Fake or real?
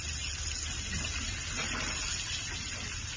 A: real